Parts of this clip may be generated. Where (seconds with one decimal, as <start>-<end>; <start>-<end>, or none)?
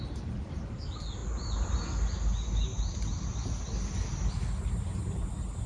none